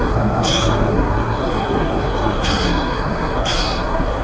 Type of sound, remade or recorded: remade